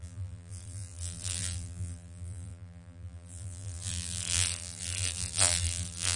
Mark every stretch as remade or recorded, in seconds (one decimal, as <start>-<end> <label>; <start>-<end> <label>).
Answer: 0.0-6.2 remade